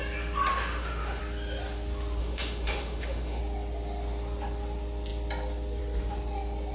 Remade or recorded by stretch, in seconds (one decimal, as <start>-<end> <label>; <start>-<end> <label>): 0.0-0.5 recorded; 0.5-1.2 remade; 1.2-2.2 recorded; 2.2-3.4 remade; 3.4-6.7 recorded